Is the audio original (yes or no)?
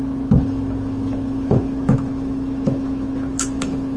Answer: no